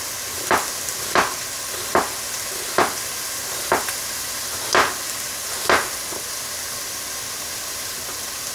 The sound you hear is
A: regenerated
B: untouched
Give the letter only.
B